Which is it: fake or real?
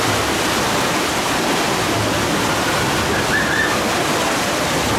real